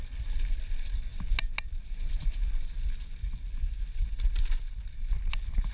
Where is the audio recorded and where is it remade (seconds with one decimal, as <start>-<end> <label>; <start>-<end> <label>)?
0.0-5.7 recorded